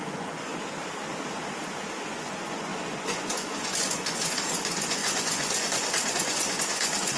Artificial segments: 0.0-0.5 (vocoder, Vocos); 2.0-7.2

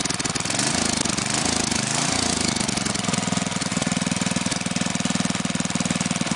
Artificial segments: 3.7-4.9 (vocoder, BigVGAN v2)

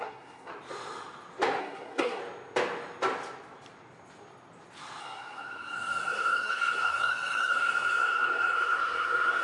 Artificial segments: 0.0-0.5 (codec, SNAC); 1.6-2.2; 5.0-9.4

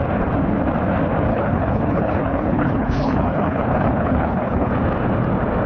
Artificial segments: 1.3-4.7 (codec, HILCodec)